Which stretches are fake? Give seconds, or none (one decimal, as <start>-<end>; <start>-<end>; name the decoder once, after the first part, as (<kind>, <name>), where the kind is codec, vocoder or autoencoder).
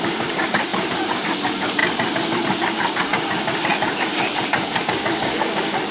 0.0-5.9 (codec, DAC)